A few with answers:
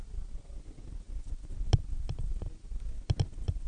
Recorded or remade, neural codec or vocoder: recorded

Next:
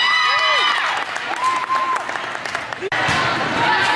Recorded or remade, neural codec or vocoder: recorded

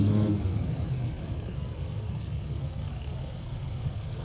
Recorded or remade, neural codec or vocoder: remade, codec, SNAC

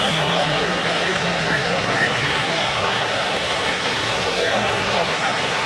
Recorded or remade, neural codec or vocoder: remade, codec, SNAC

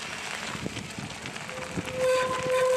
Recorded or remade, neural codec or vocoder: recorded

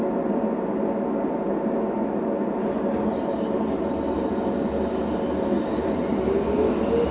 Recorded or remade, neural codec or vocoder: recorded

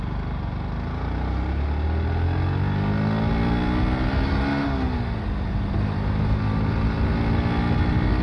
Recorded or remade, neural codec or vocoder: recorded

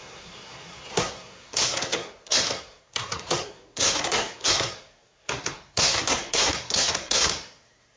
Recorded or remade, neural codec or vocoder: remade, codec, SNAC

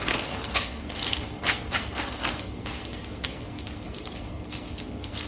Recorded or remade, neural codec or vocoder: remade, codec, SNAC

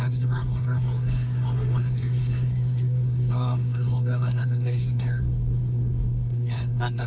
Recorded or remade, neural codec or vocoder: remade, codec, SNAC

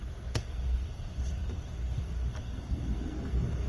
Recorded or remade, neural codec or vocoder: remade, codec, SNAC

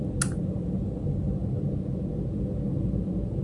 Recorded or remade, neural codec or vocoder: recorded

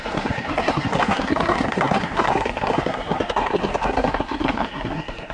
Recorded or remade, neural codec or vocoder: remade, codec, SNAC